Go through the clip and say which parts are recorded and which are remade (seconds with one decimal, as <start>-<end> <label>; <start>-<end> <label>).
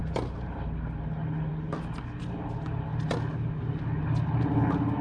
0.0-5.0 recorded